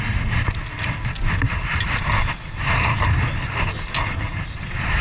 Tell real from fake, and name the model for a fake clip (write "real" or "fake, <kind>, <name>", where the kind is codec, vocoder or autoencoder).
real